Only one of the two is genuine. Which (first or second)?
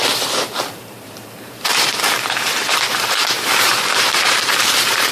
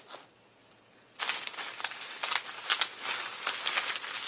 second